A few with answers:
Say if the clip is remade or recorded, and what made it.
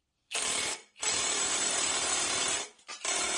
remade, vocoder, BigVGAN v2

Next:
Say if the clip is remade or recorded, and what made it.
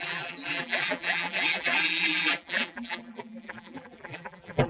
remade, vocoder, BigVGAN v2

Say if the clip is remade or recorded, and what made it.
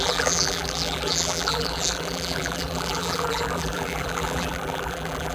remade, vocoder, BigVGAN v2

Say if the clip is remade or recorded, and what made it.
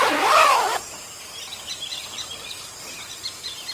remade, vocoder, BigVGAN v2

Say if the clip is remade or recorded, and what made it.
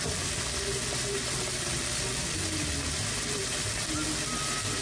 recorded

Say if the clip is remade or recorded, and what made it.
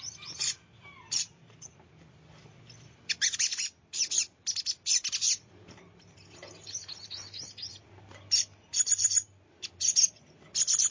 recorded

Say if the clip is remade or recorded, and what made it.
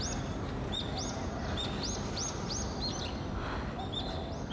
recorded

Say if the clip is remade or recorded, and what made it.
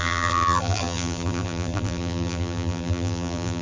remade, vocoder, BigVGAN v2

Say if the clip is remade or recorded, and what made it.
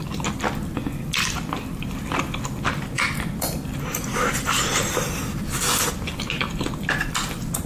recorded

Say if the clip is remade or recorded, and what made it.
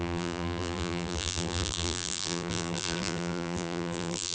remade, vocoder, BigVGAN v2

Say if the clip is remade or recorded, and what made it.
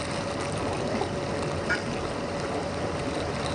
remade, vocoder, BigVGAN v2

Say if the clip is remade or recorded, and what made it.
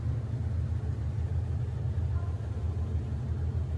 recorded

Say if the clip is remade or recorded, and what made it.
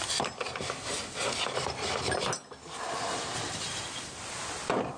remade, vocoder, BigVGAN v2